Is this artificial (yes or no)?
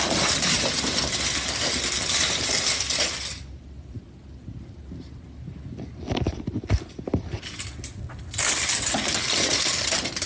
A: no